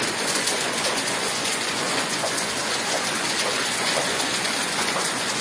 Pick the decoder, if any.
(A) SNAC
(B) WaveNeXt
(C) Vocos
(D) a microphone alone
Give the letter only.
C